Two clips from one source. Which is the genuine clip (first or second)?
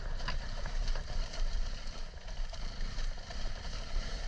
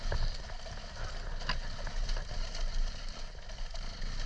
second